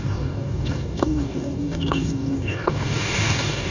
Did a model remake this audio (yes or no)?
yes